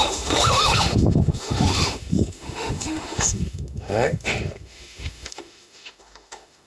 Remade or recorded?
remade